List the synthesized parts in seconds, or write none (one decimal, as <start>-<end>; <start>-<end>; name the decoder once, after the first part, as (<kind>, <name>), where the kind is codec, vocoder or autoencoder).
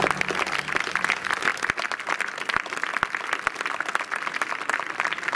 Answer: 0.0-1.5 (vocoder, BigVGAN v2); 4.3-5.3